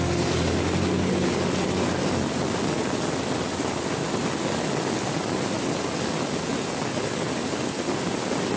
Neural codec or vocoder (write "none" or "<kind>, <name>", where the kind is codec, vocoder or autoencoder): none